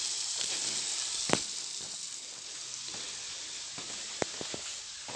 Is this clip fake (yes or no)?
no